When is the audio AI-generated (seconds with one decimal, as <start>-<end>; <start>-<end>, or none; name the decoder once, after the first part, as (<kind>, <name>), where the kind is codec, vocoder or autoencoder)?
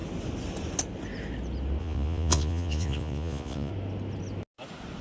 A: 1.8-3.7 (vocoder, Vocos)